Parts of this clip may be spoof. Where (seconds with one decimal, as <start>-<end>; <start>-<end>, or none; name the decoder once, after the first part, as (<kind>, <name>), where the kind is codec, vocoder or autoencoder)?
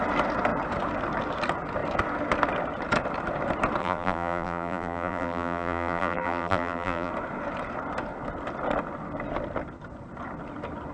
3.8-7.1 (vocoder, BigVGAN v2)